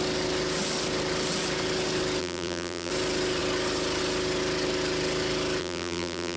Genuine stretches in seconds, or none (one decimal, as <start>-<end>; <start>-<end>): 0.0-2.2; 2.9-5.6